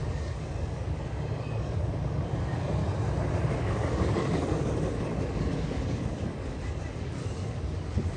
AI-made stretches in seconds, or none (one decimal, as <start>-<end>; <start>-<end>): 0.0-2.8; 3.3-8.2